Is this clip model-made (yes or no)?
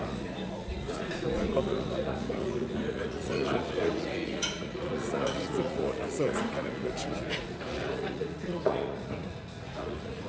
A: yes